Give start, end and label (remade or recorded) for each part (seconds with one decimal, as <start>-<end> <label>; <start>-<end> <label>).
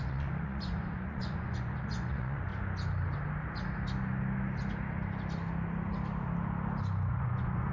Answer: 0.0-2.5 remade; 2.5-7.1 recorded; 7.1-7.7 remade